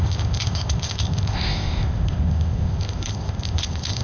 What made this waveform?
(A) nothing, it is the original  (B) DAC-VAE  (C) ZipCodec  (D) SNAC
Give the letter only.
C